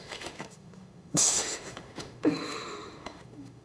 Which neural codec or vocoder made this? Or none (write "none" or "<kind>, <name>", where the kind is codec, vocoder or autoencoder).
autoencoder, DAC-VAE